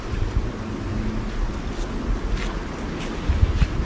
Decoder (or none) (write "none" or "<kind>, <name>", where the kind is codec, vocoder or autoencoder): none